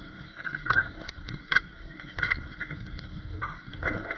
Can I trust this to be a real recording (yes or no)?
no